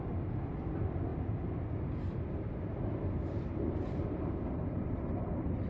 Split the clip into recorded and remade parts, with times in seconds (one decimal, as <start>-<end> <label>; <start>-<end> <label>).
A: 0.0-5.7 recorded